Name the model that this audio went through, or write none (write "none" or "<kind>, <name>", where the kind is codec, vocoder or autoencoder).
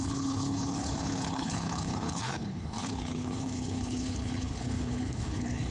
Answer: codec, HILCodec